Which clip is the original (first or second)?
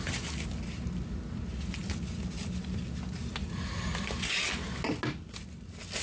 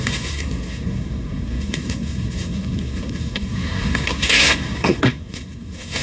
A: first